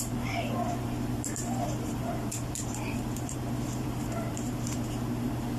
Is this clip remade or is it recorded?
remade